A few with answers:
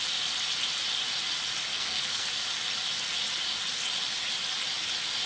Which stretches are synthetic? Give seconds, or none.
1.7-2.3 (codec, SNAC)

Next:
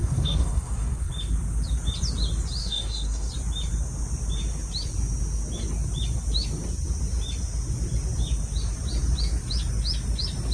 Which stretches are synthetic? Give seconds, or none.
0.0-1.1 (codec, SNAC); 2.6-3.3

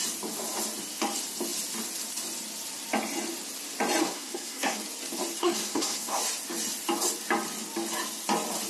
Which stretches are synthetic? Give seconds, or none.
4.0-4.8 (codec, SNAC); 5.4-6.2

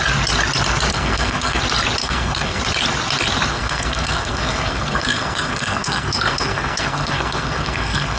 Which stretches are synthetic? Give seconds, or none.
0.9-1.6 (codec, SNAC); 2.0-2.6; 3.5-8.2